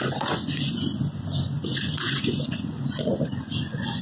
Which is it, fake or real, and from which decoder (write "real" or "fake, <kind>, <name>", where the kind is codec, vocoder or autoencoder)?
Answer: fake, vocoder, Vocos